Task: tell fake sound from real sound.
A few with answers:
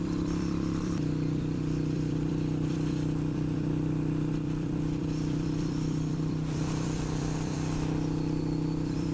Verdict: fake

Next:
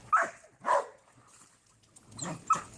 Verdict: real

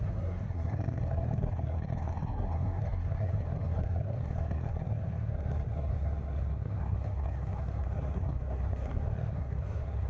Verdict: fake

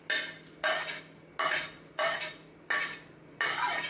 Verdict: real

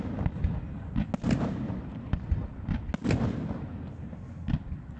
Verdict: real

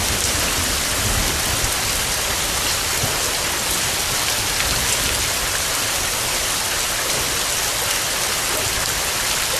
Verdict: real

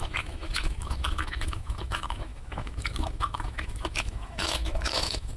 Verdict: fake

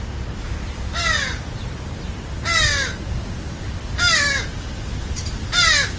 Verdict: real